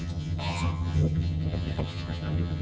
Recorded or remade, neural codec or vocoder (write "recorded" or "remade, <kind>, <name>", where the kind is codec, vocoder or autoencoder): remade, vocoder, HiFi-GAN